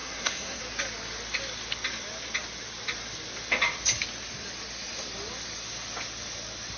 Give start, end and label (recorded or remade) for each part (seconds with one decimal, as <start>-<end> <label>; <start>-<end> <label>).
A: 0.0-0.6 remade; 0.6-6.8 recorded